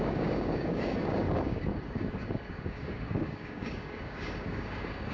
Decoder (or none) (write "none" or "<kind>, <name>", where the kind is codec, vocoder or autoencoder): codec, DAC